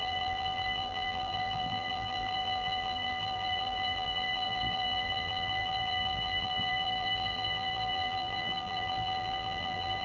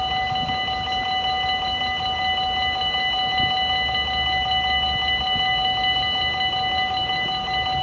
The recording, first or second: second